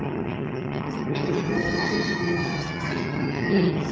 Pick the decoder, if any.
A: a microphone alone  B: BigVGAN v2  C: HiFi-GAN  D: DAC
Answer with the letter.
C